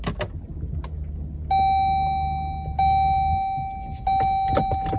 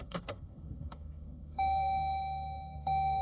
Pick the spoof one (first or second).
second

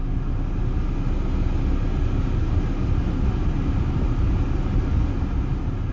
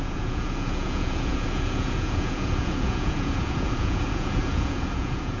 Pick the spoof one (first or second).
second